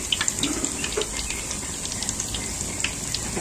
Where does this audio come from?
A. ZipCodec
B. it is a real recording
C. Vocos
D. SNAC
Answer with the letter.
B